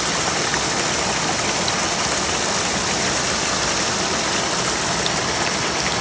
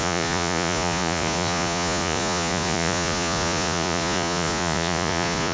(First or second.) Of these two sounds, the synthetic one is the second